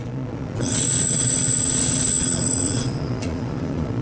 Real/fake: fake